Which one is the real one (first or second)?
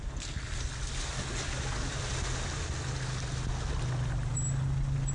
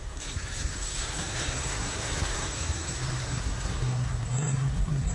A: first